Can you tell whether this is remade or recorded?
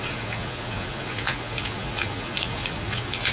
remade